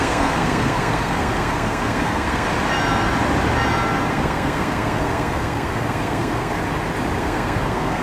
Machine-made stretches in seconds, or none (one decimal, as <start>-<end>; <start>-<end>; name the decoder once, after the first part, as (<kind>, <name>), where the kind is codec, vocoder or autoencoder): 0.0-2.5 (codec, SNAC); 4.1-6.6; 7.2-8.0